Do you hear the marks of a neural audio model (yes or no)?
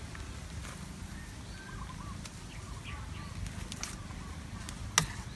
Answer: no